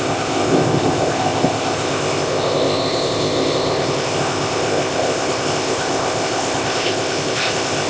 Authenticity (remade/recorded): remade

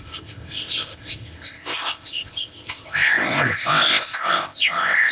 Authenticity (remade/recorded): remade